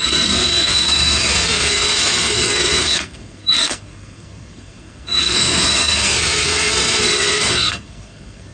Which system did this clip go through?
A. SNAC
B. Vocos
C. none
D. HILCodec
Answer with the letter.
A